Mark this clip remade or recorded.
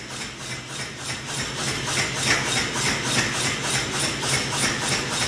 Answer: recorded